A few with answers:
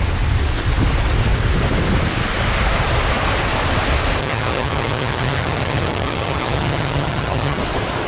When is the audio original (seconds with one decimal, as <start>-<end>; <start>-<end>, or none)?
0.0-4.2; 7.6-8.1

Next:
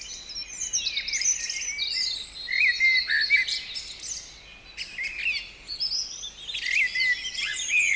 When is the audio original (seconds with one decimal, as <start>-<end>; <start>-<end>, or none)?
0.0-8.0

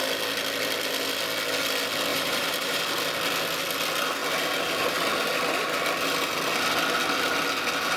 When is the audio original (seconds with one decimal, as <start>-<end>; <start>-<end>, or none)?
0.0-2.1; 2.8-8.0

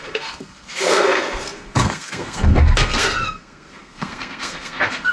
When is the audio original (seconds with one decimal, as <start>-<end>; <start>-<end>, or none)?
none